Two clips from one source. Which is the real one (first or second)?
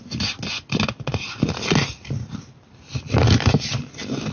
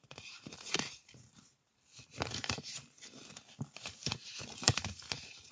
first